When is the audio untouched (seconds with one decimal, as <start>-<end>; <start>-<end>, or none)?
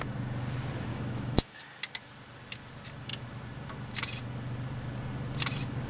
0.0-0.9; 1.6-5.9